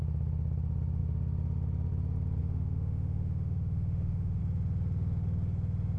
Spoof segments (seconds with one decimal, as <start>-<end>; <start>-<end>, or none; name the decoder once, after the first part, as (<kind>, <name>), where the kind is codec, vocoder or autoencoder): 2.4-4.4 (autoencoder, DAC-VAE)